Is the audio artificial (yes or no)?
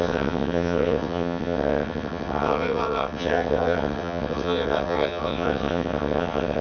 yes